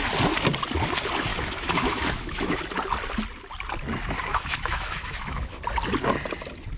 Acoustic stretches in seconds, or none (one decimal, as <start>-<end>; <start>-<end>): 0.0-1.3; 2.6-4.3; 5.6-6.8